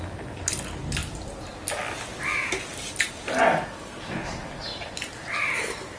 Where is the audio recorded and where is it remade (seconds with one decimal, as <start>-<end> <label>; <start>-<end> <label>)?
0.0-1.0 recorded; 1.0-1.6 remade; 1.6-2.7 recorded; 2.7-3.4 remade; 3.4-4.7 recorded; 4.7-5.2 remade; 5.2-6.0 recorded